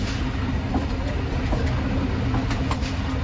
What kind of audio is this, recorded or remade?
recorded